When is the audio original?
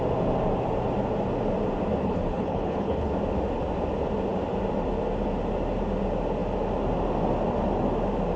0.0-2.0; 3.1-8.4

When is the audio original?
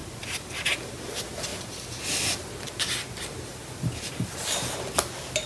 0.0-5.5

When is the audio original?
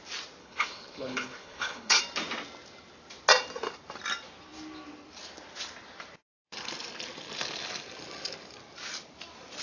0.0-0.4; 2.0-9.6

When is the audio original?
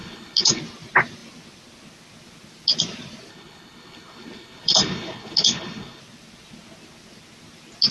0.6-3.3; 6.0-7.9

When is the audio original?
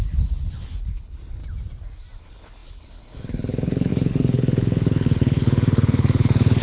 1.4-2.2